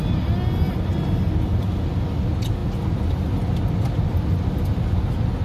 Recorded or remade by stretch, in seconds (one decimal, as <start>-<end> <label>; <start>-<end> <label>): 0.0-5.4 recorded